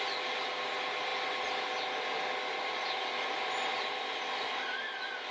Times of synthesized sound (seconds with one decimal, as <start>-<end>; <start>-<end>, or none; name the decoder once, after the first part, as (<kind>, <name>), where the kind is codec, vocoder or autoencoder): none